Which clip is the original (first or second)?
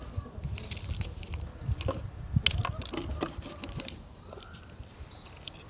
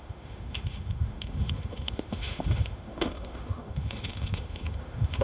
first